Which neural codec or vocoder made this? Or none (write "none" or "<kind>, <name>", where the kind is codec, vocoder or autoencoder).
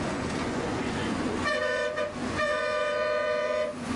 vocoder, Vocos